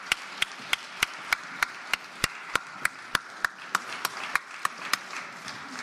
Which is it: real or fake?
real